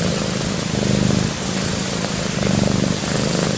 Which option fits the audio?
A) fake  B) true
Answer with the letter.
B